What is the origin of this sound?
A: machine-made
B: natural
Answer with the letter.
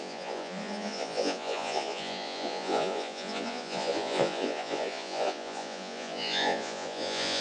A